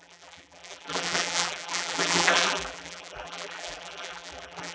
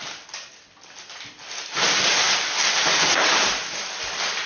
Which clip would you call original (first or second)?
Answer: second